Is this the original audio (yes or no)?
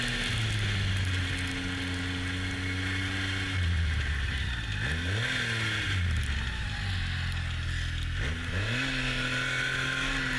yes